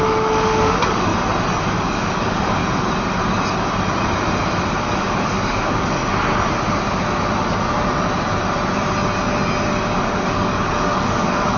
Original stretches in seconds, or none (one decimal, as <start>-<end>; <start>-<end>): 1.1-1.6; 2.6-4.8; 6.0-9.9